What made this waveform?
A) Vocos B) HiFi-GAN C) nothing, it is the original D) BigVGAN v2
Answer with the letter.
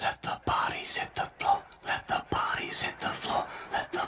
C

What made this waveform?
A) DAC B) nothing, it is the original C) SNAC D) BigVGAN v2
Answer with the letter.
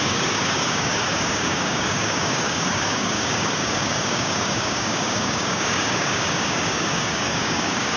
A